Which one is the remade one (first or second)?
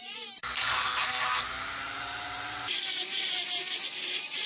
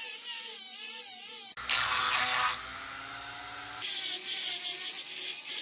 first